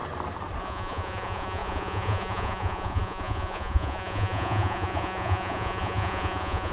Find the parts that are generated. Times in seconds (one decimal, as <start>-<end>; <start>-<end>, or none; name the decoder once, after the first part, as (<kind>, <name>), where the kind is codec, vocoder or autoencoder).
0.6-6.7 (vocoder, Vocos)

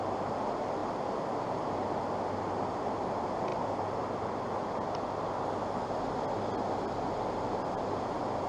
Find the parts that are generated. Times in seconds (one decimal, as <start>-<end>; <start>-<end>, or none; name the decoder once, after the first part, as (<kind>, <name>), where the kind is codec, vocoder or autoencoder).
none